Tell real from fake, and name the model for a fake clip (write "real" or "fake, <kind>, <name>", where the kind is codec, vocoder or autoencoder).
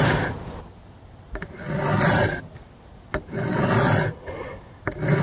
real